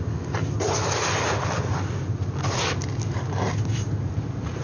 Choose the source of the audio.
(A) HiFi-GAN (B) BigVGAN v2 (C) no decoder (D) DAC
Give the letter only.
C